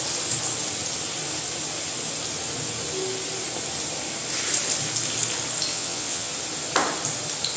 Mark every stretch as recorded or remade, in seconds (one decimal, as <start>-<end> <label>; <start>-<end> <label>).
0.0-5.7 recorded; 5.7-6.3 remade; 6.3-7.6 recorded